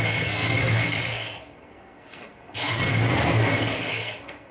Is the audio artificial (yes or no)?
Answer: yes